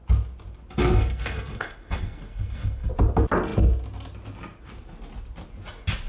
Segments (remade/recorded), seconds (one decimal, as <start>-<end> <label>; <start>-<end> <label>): 0.0-0.8 recorded; 0.8-2.9 remade; 2.9-6.1 recorded